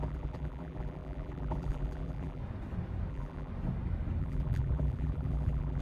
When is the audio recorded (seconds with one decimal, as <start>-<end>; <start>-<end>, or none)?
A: 2.4-3.1; 3.5-4.2